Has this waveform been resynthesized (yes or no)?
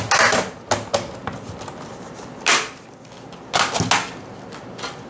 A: no